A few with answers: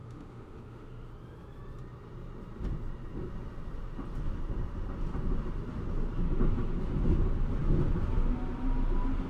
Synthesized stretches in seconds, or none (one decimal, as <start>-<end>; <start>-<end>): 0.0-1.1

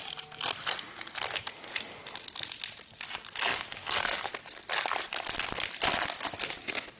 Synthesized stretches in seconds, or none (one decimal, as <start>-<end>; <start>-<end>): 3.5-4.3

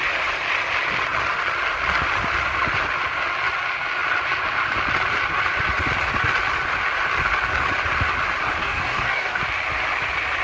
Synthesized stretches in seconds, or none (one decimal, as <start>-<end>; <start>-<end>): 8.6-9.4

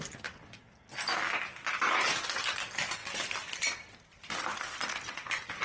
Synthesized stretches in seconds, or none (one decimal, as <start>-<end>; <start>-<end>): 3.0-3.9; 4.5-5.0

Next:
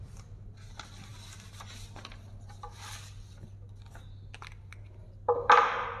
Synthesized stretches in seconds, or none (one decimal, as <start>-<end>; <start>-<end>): none